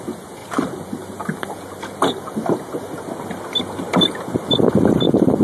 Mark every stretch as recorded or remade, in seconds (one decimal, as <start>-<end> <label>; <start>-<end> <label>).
0.0-0.4 recorded; 0.4-3.6 remade; 3.6-5.4 recorded